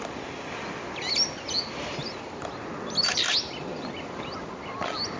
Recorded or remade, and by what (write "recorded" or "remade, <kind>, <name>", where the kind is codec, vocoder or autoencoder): recorded